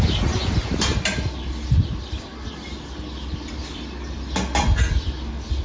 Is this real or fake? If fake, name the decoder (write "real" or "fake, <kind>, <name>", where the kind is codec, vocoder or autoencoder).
real